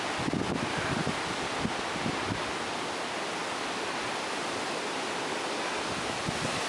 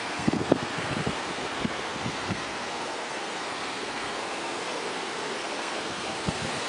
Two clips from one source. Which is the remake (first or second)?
second